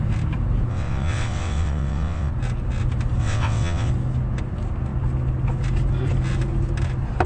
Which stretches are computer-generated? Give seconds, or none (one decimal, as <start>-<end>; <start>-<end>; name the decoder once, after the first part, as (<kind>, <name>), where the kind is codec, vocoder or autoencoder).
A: 0.7-2.3 (vocoder, WaveNeXt); 3.2-3.9